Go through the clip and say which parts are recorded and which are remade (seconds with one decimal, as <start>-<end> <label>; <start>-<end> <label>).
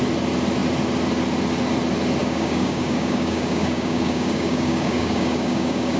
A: 0.0-2.2 recorded; 2.2-6.0 remade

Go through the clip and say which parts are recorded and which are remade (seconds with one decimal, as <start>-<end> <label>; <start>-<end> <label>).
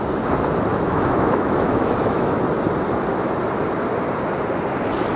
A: 0.0-0.7 recorded; 0.7-2.4 remade; 2.4-5.2 recorded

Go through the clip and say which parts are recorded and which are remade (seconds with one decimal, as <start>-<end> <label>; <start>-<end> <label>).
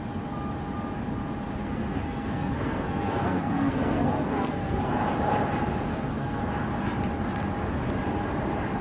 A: 0.0-1.6 recorded; 1.6-4.9 remade; 4.9-5.9 recorded; 5.9-6.4 remade; 6.4-8.8 recorded